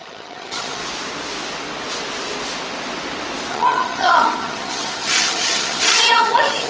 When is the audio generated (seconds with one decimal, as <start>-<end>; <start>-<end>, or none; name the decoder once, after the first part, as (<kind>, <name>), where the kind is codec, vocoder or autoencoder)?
0.0-0.8 (vocoder, HiFi-GAN); 3.5-6.7